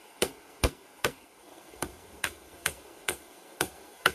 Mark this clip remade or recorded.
remade